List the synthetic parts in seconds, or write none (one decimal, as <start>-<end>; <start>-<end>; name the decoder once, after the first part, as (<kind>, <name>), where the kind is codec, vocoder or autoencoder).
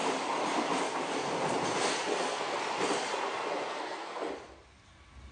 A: 2.1-2.6 (codec, SNAC); 3.7-4.3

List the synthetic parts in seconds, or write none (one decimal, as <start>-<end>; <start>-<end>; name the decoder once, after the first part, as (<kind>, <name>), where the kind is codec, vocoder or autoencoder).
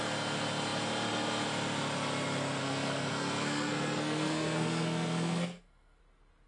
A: 2.6-6.0 (codec, SNAC)